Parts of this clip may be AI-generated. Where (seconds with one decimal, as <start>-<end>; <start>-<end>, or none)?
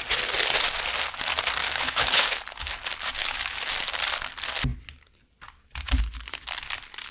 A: 1.6-2.4; 3.2-3.7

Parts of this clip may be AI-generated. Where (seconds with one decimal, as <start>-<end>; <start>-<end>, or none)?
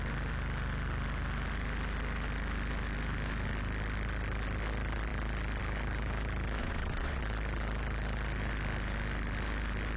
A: 6.6-7.2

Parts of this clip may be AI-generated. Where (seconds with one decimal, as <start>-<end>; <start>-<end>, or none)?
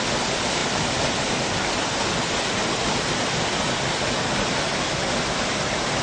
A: none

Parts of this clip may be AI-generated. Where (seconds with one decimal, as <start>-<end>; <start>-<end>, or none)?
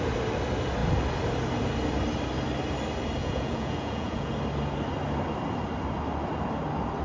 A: 3.2-4.3